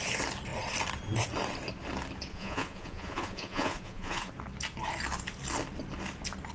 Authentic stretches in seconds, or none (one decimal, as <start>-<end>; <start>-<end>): 0.0-2.3; 4.3-6.5